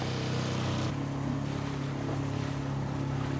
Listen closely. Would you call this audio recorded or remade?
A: recorded